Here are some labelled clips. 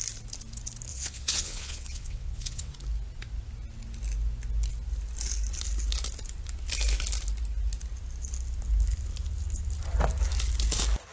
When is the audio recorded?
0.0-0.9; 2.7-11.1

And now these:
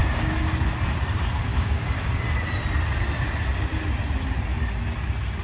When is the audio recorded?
0.5-1.5; 2.2-5.4

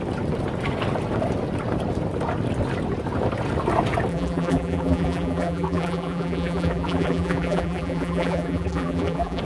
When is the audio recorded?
0.0-4.1